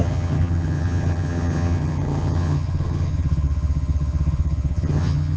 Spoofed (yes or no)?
yes